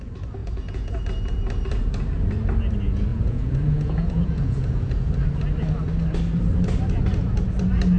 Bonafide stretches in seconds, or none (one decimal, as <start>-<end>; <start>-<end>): 0.0-0.4; 1.0-3.1; 5.1-8.0